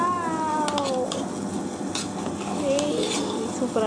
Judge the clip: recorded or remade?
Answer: recorded